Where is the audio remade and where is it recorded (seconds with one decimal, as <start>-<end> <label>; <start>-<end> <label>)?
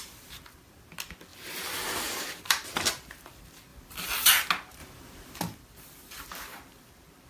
0.0-1.3 recorded; 1.3-3.3 remade; 3.3-6.5 recorded; 6.5-7.3 remade